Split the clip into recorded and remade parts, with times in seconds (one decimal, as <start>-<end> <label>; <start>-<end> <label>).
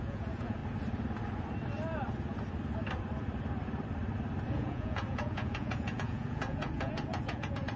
0.0-0.6 remade; 0.6-4.5 recorded; 4.5-7.8 remade